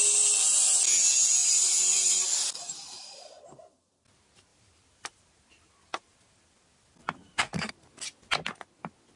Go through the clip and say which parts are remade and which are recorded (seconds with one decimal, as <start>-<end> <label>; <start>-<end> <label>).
0.0-1.4 recorded; 1.4-3.9 remade; 3.9-4.5 recorded; 4.5-7.7 remade; 7.7-9.2 recorded